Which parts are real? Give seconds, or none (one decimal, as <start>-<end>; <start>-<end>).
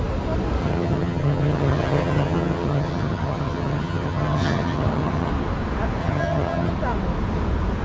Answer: 0.0-0.6; 5.3-6.0; 6.7-7.8